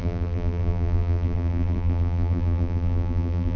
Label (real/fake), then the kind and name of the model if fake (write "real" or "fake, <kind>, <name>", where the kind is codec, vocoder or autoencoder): fake, vocoder, BigVGAN v2